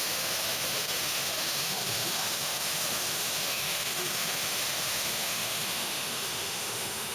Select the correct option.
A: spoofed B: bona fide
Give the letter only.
A